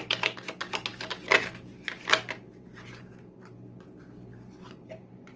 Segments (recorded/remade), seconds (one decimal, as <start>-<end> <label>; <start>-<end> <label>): 0.0-4.3 recorded; 4.3-5.4 remade